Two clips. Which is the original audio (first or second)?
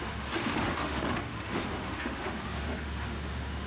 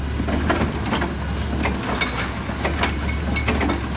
second